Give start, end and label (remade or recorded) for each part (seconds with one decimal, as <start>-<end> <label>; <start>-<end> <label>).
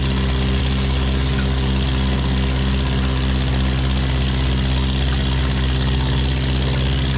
0.0-7.2 recorded